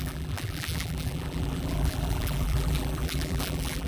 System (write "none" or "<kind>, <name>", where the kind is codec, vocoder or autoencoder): vocoder, BigVGAN v2